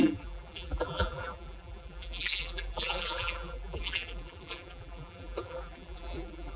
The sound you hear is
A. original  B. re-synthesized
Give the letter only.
B